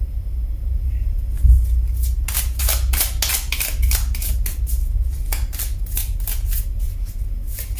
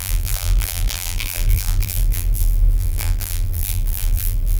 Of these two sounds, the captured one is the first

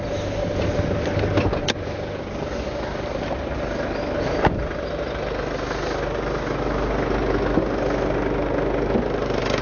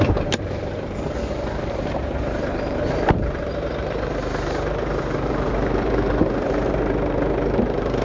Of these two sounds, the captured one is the first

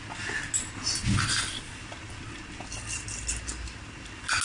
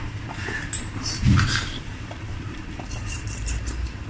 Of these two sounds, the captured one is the first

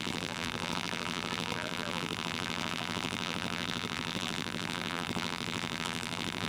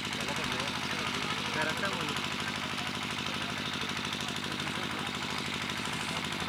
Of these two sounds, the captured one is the second